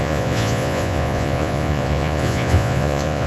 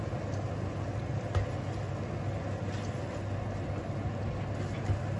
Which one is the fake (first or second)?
first